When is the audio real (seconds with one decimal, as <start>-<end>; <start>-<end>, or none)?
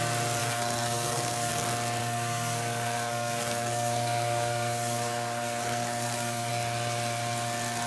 0.0-0.4; 1.5-2.0; 6.5-7.9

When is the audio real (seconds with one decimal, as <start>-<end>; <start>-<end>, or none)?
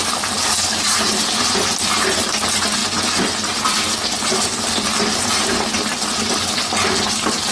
0.0-7.5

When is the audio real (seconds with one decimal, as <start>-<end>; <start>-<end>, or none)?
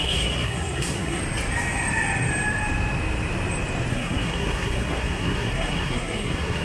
1.2-3.9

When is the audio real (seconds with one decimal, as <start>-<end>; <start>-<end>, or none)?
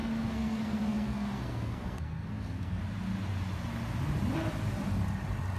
2.8-5.6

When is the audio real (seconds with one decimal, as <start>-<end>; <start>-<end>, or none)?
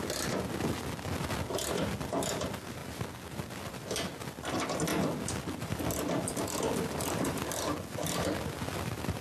0.0-9.2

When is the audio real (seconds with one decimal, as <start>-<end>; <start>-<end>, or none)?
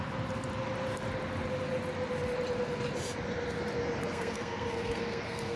0.0-4.0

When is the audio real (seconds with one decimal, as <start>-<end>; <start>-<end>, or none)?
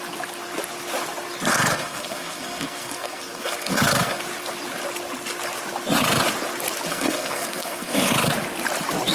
0.0-1.5; 4.2-6.9; 8.1-9.1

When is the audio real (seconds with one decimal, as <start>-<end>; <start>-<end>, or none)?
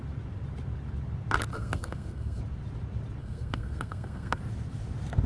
0.0-1.5; 2.4-3.2; 4.4-5.3